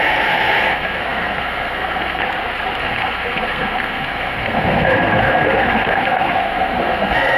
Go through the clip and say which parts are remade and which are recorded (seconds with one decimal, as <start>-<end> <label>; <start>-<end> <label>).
0.0-2.2 remade; 2.2-2.8 recorded; 2.8-7.4 remade